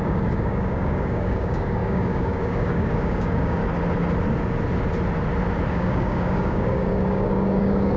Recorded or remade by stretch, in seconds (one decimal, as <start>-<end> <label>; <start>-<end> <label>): 0.0-3.6 remade; 3.6-5.7 recorded; 5.7-8.0 remade